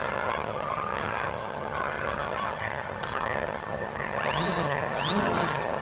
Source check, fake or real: fake